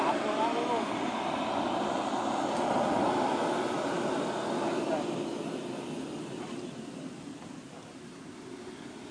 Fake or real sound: real